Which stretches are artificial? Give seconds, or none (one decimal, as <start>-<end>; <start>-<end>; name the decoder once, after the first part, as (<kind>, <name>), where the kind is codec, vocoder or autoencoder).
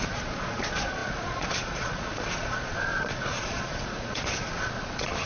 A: 0.0-5.3 (vocoder, Vocos)